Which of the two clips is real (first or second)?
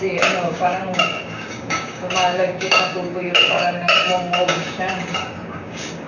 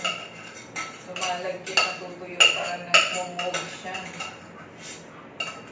second